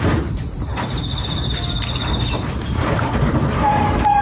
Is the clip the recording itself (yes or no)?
yes